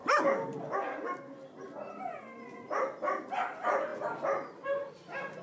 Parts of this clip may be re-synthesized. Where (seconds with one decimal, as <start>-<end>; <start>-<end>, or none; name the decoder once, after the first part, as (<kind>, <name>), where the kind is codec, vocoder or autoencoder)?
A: none